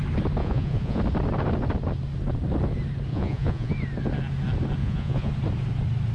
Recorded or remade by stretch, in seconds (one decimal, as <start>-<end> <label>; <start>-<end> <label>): 0.0-0.4 recorded; 0.4-1.0 remade; 1.0-3.1 recorded; 3.1-3.7 remade; 3.7-4.8 recorded; 4.8-5.3 remade; 5.3-6.1 recorded